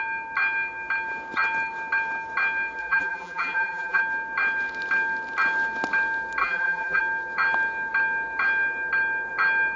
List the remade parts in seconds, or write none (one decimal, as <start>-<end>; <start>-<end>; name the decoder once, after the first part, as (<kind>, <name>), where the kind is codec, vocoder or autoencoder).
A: 2.8-4.0 (vocoder, BigVGAN v2); 6.4-7.0